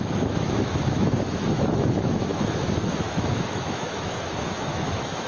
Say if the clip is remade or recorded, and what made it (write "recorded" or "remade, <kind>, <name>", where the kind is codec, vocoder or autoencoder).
remade, autoencoder, DAC-VAE